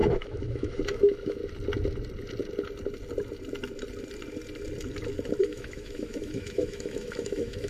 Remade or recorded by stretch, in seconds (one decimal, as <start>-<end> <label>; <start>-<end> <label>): 0.0-1.4 remade; 1.4-5.4 recorded; 5.4-7.7 remade